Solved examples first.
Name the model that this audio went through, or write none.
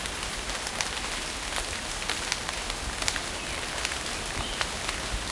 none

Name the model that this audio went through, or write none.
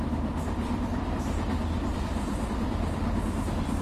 none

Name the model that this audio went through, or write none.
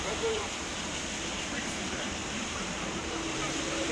vocoder, BigVGAN v2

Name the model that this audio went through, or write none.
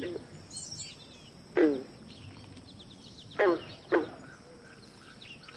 none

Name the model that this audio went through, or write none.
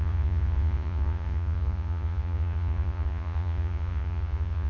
vocoder, Vocos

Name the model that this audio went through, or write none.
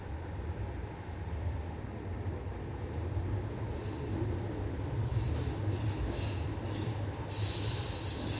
none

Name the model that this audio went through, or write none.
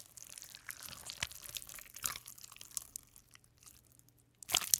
none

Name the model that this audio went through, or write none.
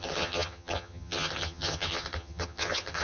vocoder, HiFi-GAN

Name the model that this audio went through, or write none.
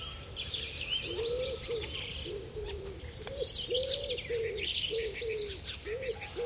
none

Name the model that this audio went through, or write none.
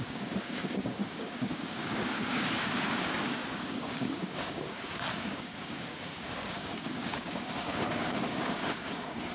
codec, DAC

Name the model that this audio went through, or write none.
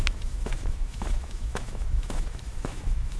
autoencoder, DAC-VAE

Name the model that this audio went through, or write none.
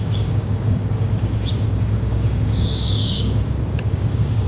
codec, DAC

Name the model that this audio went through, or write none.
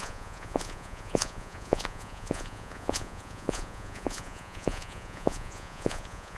vocoder, Vocos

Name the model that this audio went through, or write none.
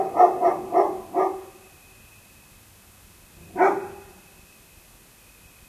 none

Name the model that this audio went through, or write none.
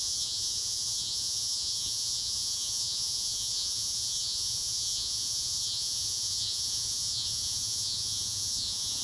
vocoder, Vocos